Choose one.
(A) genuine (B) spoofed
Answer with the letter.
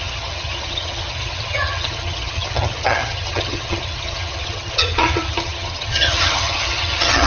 B